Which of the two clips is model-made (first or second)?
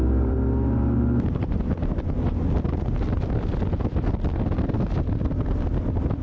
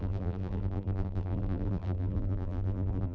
second